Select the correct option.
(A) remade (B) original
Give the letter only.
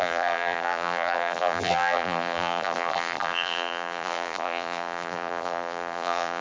A